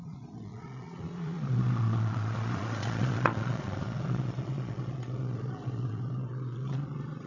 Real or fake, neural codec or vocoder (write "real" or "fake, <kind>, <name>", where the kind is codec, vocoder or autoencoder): fake, vocoder, Vocos